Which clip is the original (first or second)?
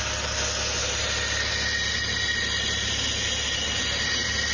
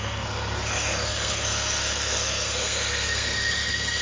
first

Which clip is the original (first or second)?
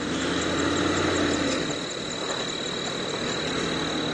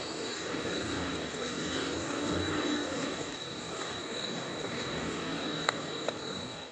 first